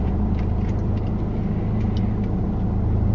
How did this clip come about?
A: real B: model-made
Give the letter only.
A